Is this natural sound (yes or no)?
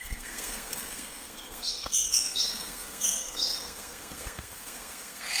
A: no